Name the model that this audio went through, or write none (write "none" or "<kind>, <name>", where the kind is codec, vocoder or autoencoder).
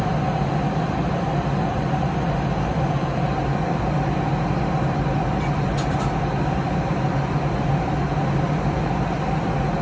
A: none